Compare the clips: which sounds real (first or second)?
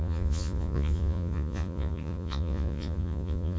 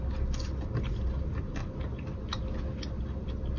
second